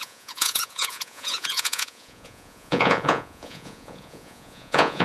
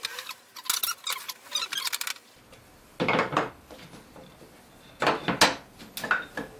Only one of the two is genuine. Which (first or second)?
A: second